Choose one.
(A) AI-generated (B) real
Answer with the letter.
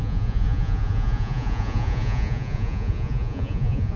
A